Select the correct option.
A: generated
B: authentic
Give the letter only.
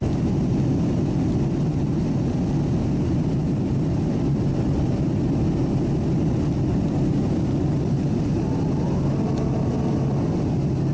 B